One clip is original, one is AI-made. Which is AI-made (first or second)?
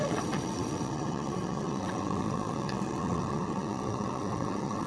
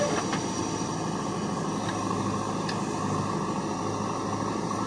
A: first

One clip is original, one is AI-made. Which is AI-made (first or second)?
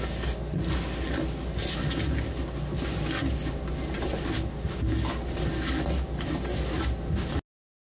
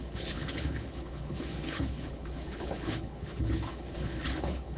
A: second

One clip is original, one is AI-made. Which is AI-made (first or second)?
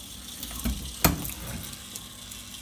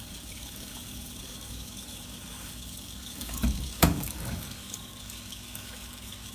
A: second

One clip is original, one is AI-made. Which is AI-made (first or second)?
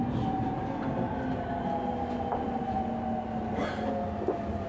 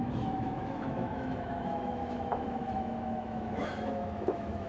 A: second